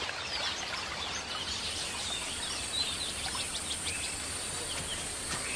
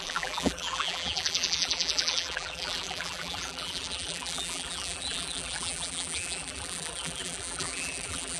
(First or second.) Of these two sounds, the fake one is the second